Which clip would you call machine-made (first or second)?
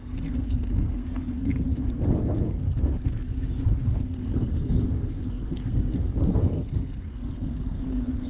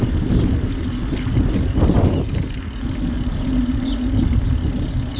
first